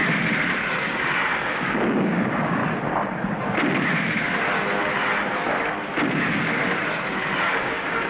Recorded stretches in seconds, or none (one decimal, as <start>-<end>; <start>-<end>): 0.0-0.8; 2.6-6.1; 6.6-7.6